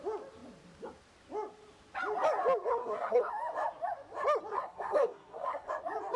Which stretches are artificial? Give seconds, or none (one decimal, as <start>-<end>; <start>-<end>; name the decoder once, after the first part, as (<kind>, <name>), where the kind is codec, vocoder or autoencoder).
2.7-3.3 (codec, SNAC); 4.5-5.7